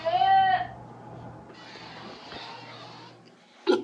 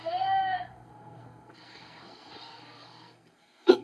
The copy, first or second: second